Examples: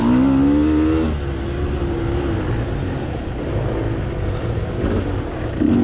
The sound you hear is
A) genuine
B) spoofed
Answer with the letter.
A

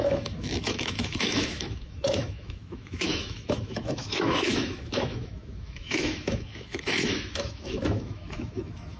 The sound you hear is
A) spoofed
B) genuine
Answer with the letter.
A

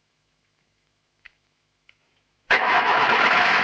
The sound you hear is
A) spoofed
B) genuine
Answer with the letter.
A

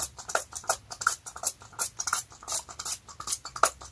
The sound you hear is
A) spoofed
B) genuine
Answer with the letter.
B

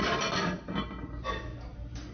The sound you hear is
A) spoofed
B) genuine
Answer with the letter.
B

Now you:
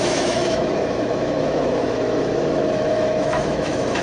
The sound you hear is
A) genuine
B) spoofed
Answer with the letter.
B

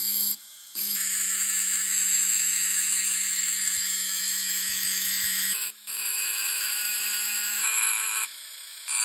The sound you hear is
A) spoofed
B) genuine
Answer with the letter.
A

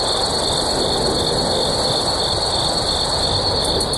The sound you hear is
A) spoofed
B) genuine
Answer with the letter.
B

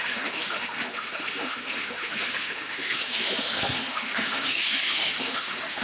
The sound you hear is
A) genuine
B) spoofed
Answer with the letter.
B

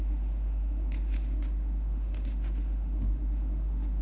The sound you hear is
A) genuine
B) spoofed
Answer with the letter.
B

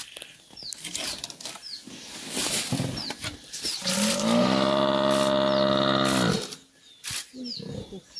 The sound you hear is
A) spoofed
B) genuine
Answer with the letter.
B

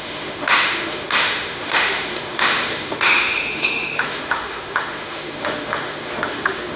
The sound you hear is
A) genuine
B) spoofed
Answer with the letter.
B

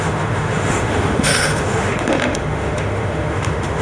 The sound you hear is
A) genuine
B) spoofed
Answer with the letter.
B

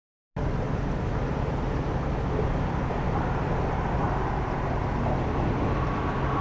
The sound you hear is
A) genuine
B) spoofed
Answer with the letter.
A